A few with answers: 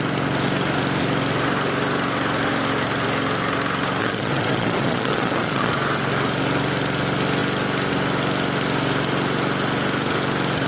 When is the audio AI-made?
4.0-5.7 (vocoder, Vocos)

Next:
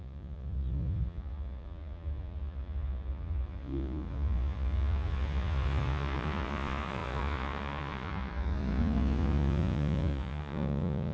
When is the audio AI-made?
0.0-11.1 (vocoder, Vocos)